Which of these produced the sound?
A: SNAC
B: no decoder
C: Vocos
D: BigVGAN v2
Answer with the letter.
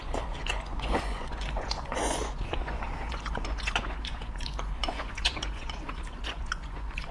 C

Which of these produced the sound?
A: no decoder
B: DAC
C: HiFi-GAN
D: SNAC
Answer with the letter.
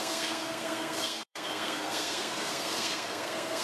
D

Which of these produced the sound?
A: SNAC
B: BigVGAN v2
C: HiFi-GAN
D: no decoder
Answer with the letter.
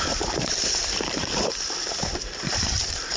B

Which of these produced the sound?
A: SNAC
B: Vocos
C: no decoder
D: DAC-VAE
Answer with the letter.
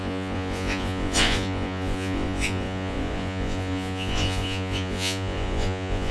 B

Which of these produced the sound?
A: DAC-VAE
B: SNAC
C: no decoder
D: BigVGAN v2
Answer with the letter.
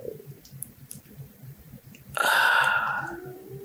D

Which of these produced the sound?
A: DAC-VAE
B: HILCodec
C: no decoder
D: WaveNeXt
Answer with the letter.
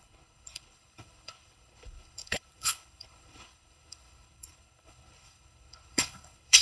B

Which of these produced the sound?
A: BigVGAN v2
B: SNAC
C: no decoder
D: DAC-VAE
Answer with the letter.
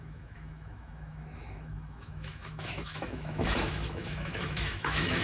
D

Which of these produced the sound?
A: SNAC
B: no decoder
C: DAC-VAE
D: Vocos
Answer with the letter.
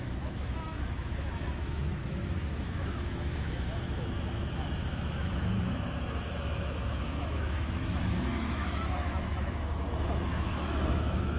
C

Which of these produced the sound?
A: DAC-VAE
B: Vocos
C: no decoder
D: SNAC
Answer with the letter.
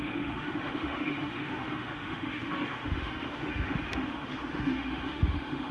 A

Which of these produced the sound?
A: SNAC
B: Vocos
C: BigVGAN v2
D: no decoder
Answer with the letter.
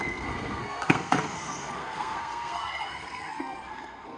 A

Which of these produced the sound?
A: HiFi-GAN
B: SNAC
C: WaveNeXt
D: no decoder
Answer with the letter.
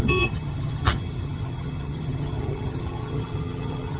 A